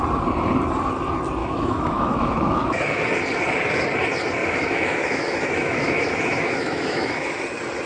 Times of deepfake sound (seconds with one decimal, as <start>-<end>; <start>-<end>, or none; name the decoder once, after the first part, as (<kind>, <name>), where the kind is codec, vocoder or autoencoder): 1.4-3.0 (autoencoder, DAC-VAE); 4.4-7.4